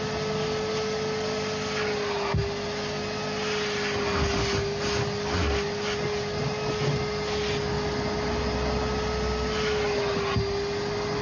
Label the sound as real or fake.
real